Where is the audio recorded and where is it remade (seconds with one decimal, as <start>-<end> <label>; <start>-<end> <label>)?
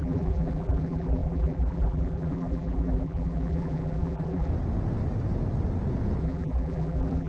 0.0-4.5 remade; 4.5-6.2 recorded; 6.2-7.3 remade